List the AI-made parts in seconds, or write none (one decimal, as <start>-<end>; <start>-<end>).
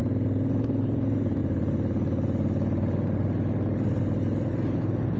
0.5-1.4; 4.5-5.2